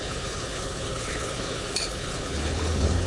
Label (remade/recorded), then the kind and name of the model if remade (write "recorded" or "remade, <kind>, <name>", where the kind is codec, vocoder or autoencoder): remade, codec, HILCodec